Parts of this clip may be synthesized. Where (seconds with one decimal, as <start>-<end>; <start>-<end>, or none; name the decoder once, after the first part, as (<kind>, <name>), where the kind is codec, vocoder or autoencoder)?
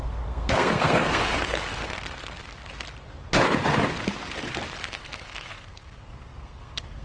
0.0-1.8 (codec, SNAC); 4.9-7.0